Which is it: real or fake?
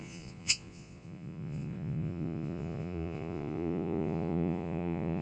fake